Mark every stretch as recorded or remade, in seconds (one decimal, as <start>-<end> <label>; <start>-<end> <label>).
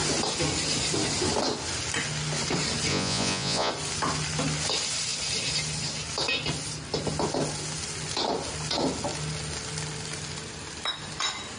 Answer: 0.0-2.9 recorded; 2.9-3.7 remade; 3.7-11.6 recorded